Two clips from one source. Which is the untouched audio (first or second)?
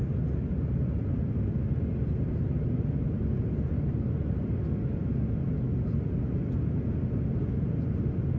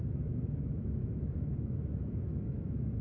first